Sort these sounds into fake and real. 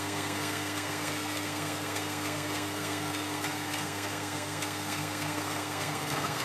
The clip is fake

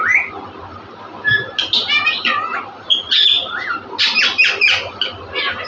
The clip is real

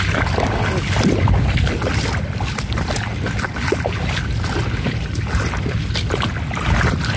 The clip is real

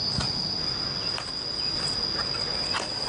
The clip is real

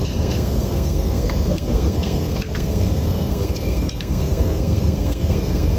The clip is fake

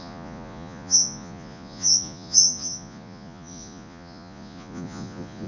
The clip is fake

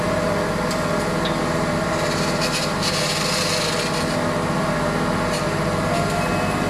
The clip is real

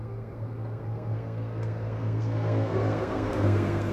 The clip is fake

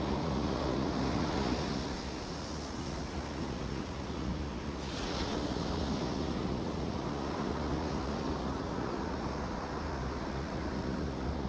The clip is fake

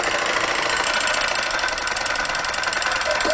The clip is real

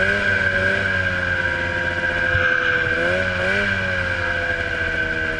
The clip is real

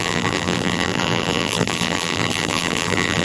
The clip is fake